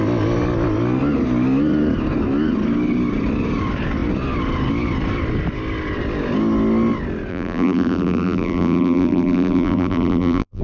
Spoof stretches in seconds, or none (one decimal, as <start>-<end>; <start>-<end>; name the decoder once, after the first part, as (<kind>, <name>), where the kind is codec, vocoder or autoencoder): 7.3-10.6 (vocoder, BigVGAN v2)